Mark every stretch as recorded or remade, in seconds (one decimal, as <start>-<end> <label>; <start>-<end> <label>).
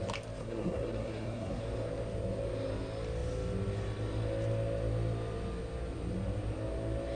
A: 0.0-0.4 recorded; 0.4-1.6 remade; 1.6-7.2 recorded